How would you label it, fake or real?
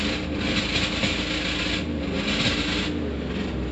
real